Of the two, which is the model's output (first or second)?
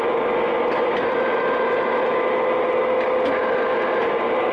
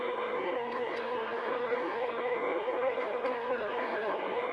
second